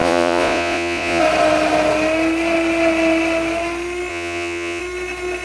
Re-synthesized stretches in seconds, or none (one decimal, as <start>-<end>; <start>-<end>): 0.0-1.2; 4.1-4.8